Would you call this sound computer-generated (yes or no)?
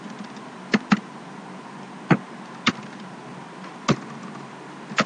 no